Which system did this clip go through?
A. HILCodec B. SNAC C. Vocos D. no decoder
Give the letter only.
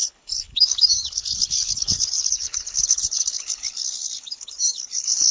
A